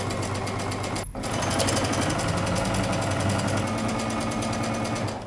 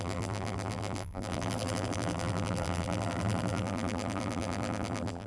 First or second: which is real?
first